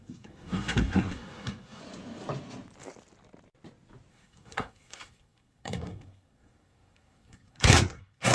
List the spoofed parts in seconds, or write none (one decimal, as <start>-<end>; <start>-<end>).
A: 0.0-1.8; 4.1-8.3

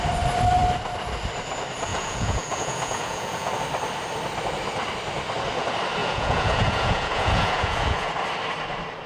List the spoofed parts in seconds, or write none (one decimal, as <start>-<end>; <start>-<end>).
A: 1.9-3.5; 6.0-8.1

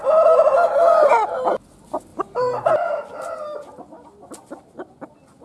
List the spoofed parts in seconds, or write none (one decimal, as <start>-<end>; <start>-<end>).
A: none

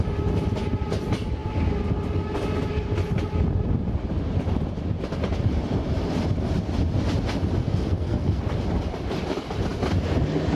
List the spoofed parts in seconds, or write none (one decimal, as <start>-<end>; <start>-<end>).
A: 7.6-8.4

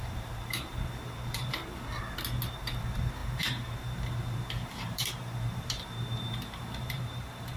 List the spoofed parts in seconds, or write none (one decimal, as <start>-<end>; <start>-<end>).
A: 0.0-1.6; 2.8-7.6

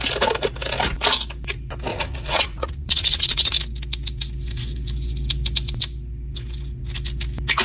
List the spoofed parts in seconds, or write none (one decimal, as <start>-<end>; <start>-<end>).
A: 1.9-3.6